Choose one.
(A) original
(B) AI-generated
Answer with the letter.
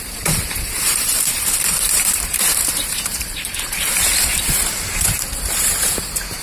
B